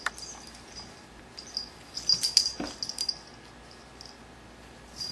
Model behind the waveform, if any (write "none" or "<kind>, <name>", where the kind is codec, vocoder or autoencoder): none